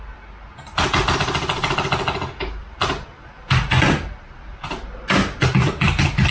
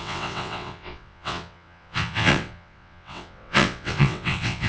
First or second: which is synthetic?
second